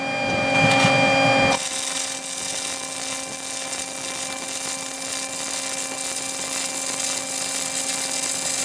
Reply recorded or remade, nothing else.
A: recorded